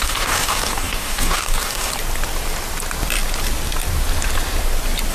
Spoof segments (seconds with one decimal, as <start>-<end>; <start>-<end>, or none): 0.0-1.9